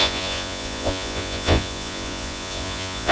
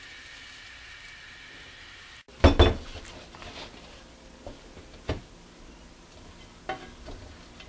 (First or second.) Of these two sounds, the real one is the second